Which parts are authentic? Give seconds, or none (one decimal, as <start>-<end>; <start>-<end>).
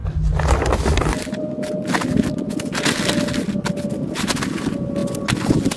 0.0-5.8